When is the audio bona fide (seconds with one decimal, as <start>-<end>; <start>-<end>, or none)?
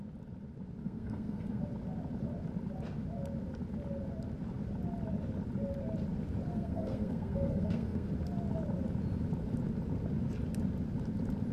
0.0-0.8; 1.6-6.5; 8.1-11.5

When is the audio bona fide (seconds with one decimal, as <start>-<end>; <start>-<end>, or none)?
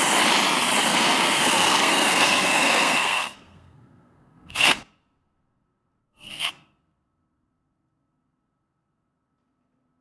0.0-0.9; 4.8-6.0; 6.5-10.0